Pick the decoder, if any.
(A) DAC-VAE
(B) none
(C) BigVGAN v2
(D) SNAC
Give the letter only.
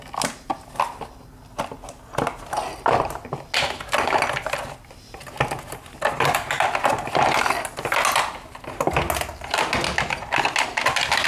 B